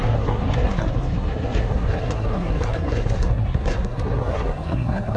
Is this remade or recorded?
remade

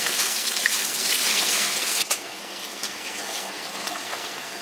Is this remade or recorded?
remade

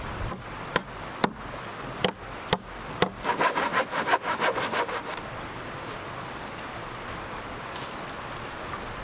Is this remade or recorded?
recorded